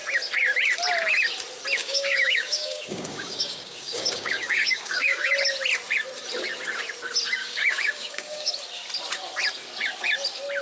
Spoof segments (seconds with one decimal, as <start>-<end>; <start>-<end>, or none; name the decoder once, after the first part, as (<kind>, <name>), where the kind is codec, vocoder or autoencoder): 1.8-5.3 (codec, DAC); 7.4-8.5